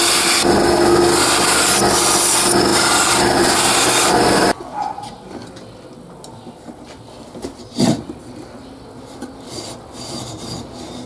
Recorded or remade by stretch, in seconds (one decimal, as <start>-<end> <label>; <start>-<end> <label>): 0.0-11.1 recorded